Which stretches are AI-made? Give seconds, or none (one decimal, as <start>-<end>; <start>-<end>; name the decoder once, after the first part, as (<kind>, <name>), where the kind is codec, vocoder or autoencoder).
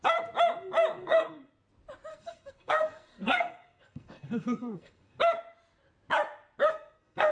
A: 1.0-1.5 (codec, SNAC); 2.1-5.2; 6.7-7.3